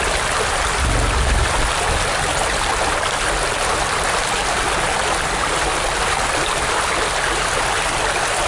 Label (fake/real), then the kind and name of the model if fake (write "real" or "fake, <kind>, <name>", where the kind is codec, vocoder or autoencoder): real